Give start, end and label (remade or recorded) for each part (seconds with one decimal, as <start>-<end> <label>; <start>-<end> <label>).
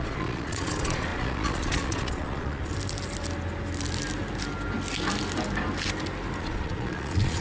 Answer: 0.0-2.7 remade; 2.7-6.4 recorded; 6.4-7.4 remade